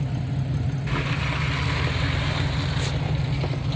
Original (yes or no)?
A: yes